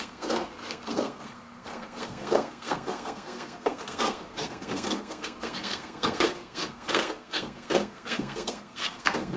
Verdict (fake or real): fake